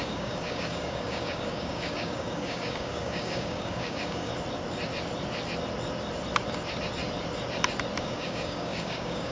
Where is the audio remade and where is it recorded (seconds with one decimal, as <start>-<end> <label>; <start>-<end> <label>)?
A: 0.0-4.3 remade; 4.3-8.0 recorded; 8.0-9.3 remade